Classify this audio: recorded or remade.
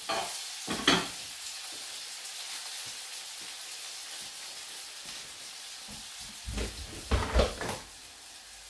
recorded